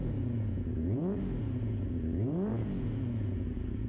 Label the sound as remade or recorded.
remade